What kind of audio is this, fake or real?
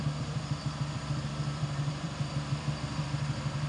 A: fake